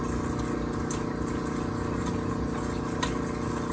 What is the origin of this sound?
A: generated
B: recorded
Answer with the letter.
B